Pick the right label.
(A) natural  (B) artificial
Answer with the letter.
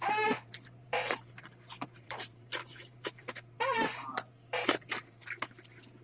B